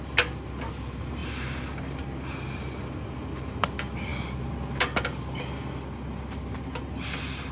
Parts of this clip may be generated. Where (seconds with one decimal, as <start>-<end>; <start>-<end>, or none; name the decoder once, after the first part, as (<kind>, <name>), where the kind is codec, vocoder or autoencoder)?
none